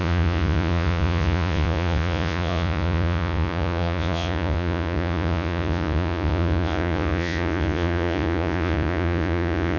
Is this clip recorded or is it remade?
remade